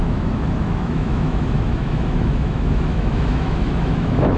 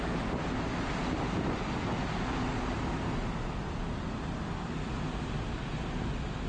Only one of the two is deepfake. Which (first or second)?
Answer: first